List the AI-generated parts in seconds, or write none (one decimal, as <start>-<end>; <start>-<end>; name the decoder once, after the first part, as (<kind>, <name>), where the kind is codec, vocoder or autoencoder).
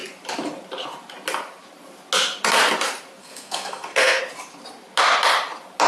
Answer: 3.2-4.2 (codec, SNAC)